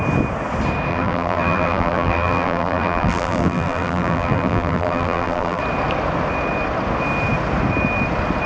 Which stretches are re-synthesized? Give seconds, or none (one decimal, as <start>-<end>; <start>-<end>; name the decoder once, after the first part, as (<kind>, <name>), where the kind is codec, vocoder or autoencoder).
0.9-5.6 (vocoder, BigVGAN v2)